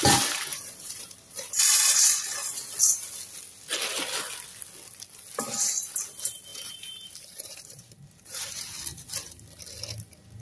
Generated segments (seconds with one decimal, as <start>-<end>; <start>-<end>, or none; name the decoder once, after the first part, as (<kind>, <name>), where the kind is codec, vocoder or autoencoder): 0.5-1.6 (vocoder, BigVGAN v2); 6.5-8.6